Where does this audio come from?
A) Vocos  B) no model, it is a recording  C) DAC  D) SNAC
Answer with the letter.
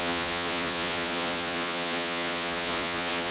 A